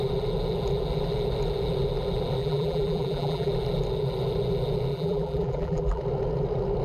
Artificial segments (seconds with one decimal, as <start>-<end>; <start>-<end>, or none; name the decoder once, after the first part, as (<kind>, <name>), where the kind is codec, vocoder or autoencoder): 2.4-3.5 (vocoder, BigVGAN v2); 4.9-6.0

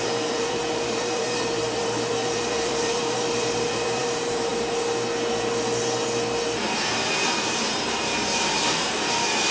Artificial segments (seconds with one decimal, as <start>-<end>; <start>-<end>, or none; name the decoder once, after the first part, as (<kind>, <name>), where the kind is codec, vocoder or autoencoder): 0.0-4.5 (vocoder, BigVGAN v2); 6.6-9.5

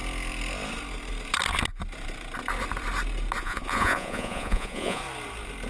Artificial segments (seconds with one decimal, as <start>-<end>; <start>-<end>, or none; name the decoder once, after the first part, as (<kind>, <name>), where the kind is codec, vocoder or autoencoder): 3.4-5.0 (vocoder, Vocos)

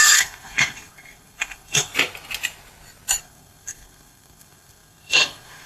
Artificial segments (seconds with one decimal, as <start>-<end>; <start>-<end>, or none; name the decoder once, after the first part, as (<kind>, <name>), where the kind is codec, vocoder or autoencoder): 0.0-1.9 (codec, SNAC); 3.2-5.7

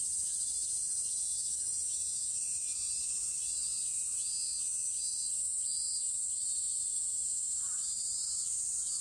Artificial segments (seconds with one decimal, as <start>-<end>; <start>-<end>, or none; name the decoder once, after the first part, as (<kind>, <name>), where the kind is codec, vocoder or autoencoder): none

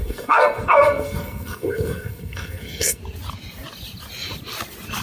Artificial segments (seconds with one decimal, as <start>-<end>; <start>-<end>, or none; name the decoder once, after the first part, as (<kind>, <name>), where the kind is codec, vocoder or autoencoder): 0.0-3.0 (codec, SNAC)